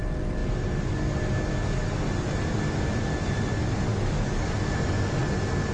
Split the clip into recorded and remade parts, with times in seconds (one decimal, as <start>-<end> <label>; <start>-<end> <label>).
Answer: 0.0-3.9 recorded; 3.9-4.5 remade; 4.5-5.7 recorded